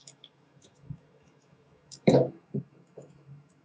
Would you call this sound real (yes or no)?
no